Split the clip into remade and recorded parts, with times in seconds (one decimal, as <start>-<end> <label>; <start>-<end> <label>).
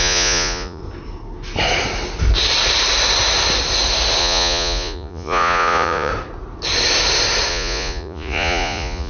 0.0-0.8 remade; 0.8-4.2 recorded; 4.2-6.1 remade; 6.1-7.5 recorded; 7.5-9.1 remade